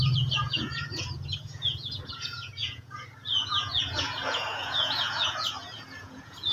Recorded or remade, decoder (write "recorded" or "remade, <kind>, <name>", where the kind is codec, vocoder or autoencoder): remade, vocoder, Vocos